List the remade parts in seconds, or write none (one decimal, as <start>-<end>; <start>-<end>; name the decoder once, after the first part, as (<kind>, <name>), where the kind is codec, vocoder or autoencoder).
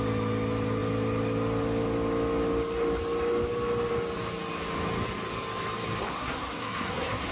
6.1-7.3 (codec, SNAC)